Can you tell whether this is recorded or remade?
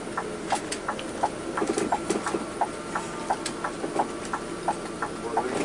recorded